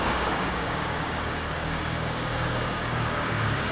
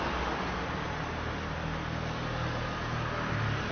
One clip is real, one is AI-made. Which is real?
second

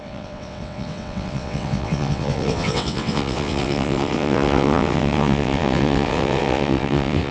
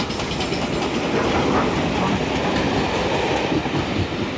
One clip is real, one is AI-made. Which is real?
second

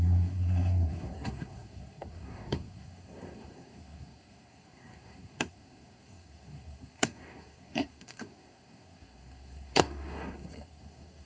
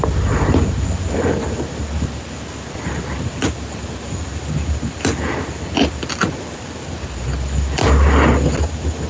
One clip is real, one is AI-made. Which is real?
second